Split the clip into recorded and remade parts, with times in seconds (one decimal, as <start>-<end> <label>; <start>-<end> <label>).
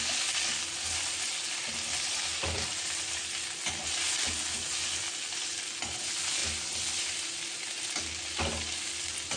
0.0-9.4 recorded